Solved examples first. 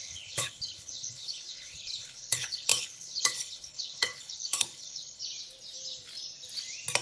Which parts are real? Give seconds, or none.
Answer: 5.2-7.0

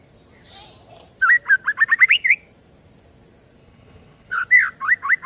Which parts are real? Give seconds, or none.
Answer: 0.0-3.6; 4.4-5.3

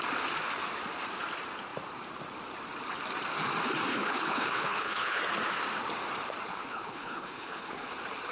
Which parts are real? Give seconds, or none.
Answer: 0.0-3.9; 5.2-6.5; 7.9-8.3